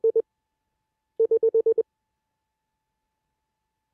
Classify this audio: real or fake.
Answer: real